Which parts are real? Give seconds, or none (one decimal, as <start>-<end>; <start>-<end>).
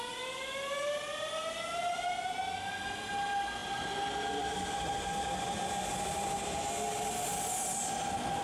0.0-8.4